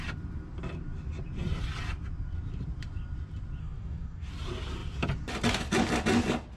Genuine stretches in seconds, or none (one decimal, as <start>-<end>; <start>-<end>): 0.0-3.6; 4.3-6.6